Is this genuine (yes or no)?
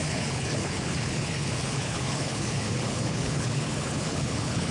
no